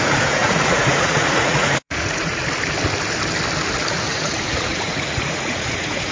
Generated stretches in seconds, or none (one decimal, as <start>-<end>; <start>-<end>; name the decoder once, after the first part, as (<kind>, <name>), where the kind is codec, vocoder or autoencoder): 0.0-2.4 (vocoder, Vocos); 3.9-6.1